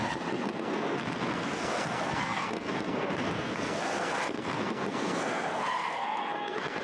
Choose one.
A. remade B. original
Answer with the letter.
A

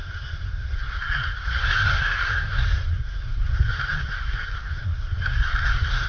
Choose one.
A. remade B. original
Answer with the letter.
A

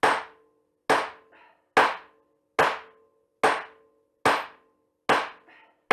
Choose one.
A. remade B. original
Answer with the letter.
B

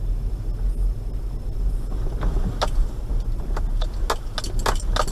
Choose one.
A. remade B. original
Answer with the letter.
B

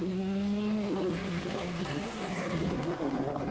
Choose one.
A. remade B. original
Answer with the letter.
A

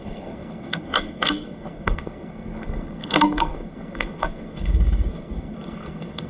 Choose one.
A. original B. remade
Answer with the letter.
B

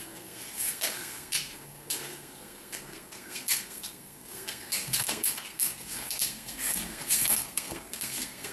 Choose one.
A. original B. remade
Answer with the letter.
B